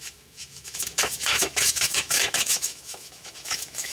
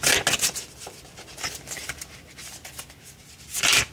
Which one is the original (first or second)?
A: second